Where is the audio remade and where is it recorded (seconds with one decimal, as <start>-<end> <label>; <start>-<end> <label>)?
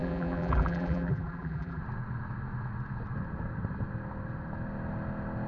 0.0-1.8 remade; 1.8-5.5 recorded